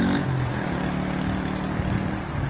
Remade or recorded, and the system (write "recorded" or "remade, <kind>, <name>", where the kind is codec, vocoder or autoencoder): recorded